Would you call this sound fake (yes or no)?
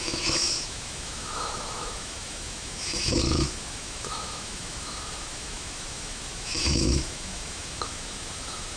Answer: yes